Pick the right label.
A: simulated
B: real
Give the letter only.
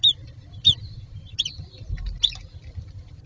B